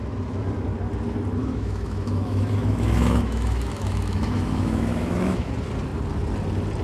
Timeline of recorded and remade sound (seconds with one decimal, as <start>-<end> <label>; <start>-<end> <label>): 0.0-1.4 recorded; 1.4-5.5 remade; 5.5-6.8 recorded